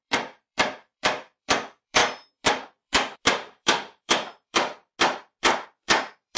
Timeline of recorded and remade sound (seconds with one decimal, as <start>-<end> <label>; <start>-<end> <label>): 0.0-4.8 remade; 4.8-5.4 recorded; 5.4-6.4 remade